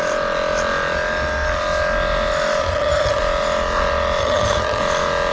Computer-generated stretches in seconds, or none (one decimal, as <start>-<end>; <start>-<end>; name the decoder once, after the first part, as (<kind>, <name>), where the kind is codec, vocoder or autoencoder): 2.6-3.2 (vocoder, HiFi-GAN); 4.2-4.8